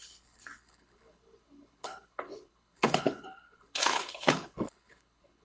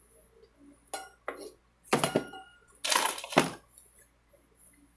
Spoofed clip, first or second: first